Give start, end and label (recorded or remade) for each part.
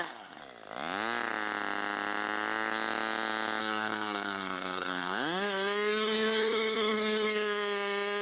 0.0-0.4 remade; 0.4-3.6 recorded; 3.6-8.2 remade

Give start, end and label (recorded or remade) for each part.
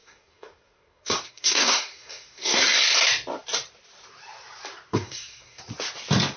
0.0-2.6 remade; 2.6-4.9 recorded; 4.9-5.6 remade; 5.6-6.4 recorded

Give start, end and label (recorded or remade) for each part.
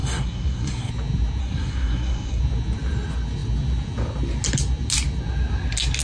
0.0-0.9 remade; 0.9-1.4 recorded; 1.4-2.4 remade; 2.4-6.0 recorded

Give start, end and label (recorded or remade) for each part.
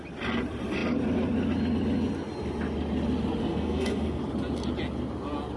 0.0-3.4 recorded; 3.4-4.2 remade; 4.2-5.6 recorded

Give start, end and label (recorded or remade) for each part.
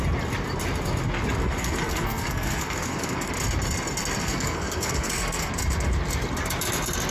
0.0-1.4 recorded; 1.4-3.3 remade; 3.3-4.2 recorded; 4.2-5.5 remade; 5.5-7.1 recorded